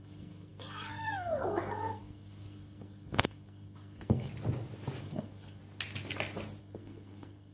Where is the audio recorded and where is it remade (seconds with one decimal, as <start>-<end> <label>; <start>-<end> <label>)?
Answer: 0.0-4.3 remade; 4.3-5.0 recorded; 5.0-5.6 remade; 5.6-6.6 recorded; 6.6-7.5 remade